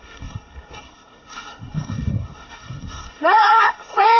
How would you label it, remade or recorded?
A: remade